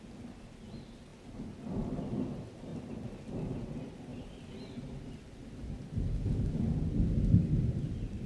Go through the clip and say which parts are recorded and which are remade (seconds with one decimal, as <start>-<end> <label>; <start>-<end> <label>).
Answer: 0.0-8.3 recorded